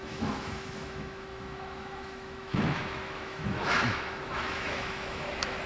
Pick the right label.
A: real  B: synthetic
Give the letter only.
B